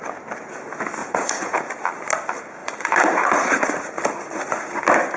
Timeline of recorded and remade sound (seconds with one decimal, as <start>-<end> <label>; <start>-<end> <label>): 0.0-1.0 recorded; 1.0-1.7 remade; 1.7-2.6 recorded; 2.6-4.8 remade; 4.8-5.2 recorded